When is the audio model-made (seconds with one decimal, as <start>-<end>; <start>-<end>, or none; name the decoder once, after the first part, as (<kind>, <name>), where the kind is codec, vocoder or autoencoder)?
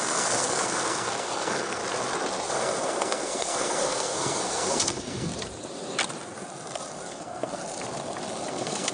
0.0-1.8 (codec, SNAC); 2.5-5.3; 7.1-7.6; 8.5-8.9